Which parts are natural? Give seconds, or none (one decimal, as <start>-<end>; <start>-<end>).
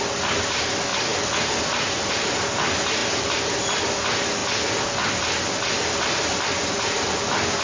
0.0-0.9; 2.1-3.0; 3.8-7.6